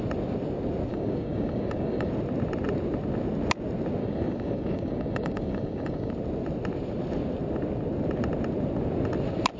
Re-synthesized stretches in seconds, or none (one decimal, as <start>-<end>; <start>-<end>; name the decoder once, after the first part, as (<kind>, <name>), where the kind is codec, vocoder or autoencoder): 0.9-2.1 (codec, DAC); 4.0-6.1